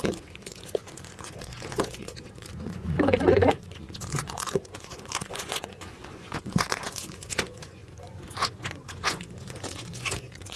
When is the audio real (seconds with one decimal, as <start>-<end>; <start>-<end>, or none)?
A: none